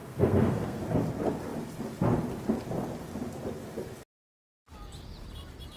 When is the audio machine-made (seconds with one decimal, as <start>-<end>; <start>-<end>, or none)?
0.0-0.8